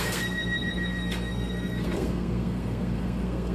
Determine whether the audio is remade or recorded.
remade